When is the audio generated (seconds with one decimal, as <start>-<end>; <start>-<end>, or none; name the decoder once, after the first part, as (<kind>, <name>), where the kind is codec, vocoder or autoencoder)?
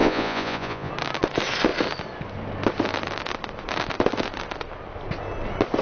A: 0.0-0.9 (vocoder, Vocos)